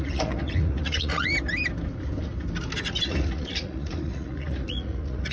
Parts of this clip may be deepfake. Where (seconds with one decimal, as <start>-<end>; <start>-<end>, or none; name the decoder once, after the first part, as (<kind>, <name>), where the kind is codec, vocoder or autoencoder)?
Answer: 0.0-1.3 (vocoder, Vocos); 3.0-5.3